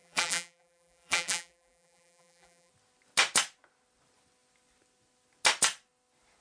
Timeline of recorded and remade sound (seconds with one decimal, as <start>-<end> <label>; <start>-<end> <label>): 0.0-2.7 remade; 2.7-6.4 recorded